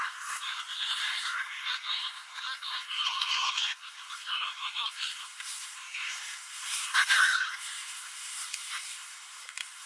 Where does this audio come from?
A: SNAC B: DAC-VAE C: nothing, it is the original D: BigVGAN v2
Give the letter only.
A